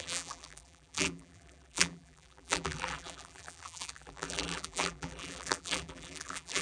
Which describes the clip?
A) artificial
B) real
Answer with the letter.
A